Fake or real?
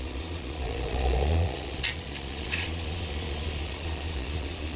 fake